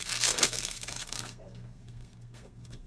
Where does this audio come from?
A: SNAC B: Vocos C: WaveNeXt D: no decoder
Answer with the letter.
A